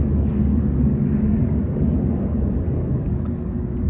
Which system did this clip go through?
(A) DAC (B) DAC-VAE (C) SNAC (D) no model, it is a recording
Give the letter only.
A